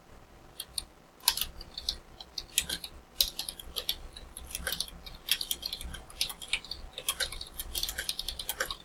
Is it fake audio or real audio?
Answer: real